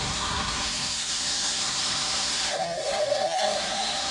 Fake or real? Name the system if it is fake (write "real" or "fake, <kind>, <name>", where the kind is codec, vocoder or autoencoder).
fake, codec, SNAC